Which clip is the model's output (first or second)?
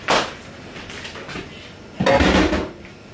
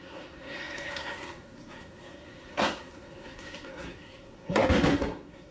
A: second